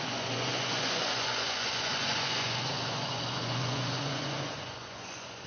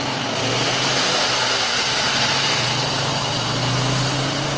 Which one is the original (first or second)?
second